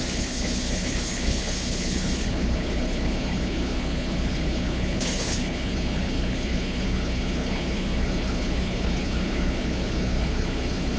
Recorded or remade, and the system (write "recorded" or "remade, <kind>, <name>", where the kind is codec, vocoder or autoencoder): remade, codec, HILCodec